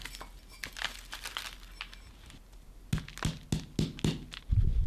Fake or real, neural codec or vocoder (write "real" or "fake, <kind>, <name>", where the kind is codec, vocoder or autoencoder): real